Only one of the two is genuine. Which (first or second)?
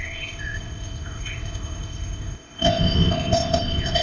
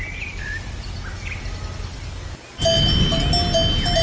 second